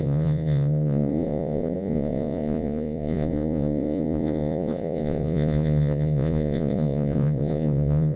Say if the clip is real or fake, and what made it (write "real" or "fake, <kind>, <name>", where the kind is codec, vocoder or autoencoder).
fake, vocoder, Vocos